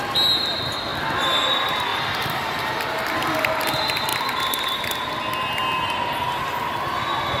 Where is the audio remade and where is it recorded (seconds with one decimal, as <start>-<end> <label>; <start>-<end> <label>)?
0.0-1.9 recorded; 1.9-2.8 remade; 2.8-7.4 recorded